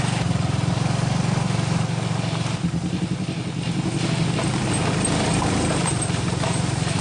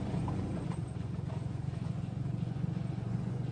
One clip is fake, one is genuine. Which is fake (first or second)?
second